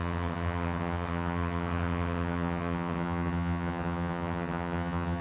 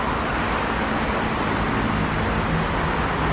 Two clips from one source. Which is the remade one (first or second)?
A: first